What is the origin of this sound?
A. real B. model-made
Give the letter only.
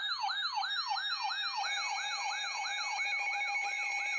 A